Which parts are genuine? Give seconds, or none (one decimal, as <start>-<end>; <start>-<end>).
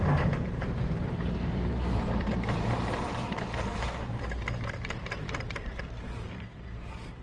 4.1-4.7